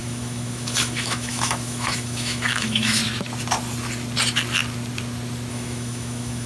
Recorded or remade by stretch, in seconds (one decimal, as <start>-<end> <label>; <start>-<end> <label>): 0.0-3.0 remade; 3.0-5.5 recorded; 5.5-6.5 remade